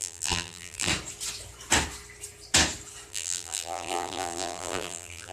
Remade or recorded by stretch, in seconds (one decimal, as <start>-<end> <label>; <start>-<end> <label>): 0.0-0.9 remade; 0.9-3.1 recorded; 3.1-5.3 remade